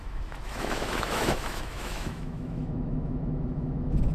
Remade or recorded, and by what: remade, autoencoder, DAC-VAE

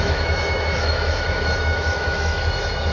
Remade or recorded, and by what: remade, autoencoder, DAC-VAE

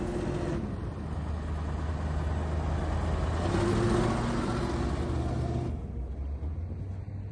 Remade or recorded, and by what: recorded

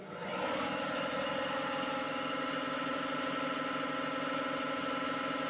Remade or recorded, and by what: recorded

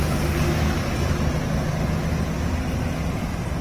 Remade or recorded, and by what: recorded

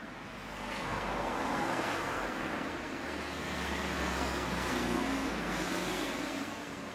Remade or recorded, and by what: remade, codec, SNAC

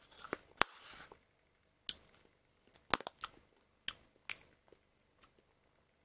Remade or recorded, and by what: recorded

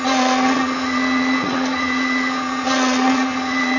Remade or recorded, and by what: remade, vocoder, Vocos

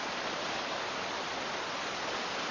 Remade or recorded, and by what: recorded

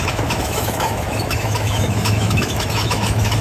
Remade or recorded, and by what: remade, autoencoder, DAC-VAE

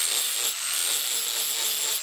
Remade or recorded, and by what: recorded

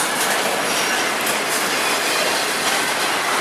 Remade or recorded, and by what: recorded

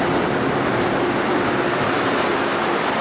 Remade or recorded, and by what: recorded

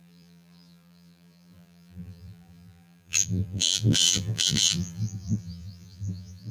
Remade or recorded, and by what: remade, vocoder, BigVGAN v2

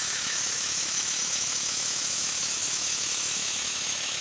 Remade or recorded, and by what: remade, autoencoder, DAC-VAE